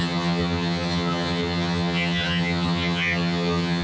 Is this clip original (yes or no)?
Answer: no